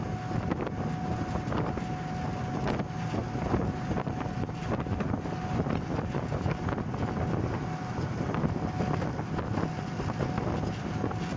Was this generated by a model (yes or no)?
no